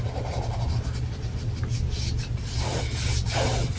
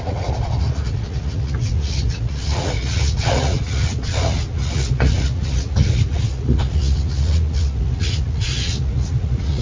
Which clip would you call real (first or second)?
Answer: first